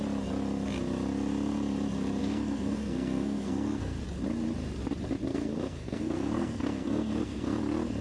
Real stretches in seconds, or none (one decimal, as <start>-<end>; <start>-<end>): 0.0-2.2; 4.0-5.3; 7.6-8.0